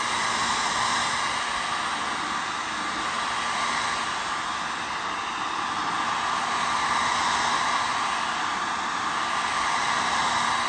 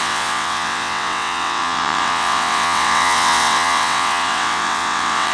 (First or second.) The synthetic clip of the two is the second